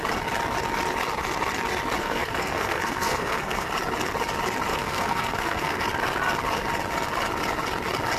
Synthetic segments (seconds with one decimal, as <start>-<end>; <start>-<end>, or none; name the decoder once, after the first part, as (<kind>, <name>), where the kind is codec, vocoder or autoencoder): 2.0-3.7 (codec, SNAC); 4.7-5.8